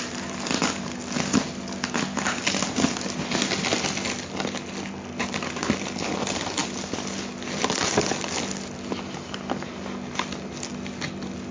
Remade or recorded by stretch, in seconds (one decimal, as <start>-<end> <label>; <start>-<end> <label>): 0.0-11.5 recorded